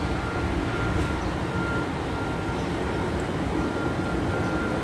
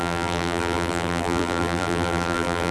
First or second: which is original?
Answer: first